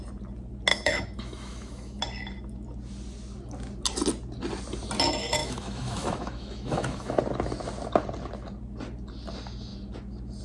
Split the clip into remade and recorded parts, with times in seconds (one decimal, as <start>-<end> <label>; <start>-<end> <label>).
0.0-0.7 recorded; 0.7-2.0 remade; 2.0-5.4 recorded; 5.4-7.2 remade; 7.2-10.4 recorded